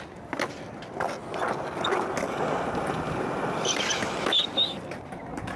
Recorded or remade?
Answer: recorded